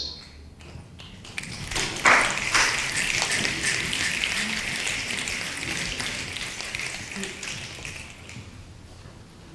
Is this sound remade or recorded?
recorded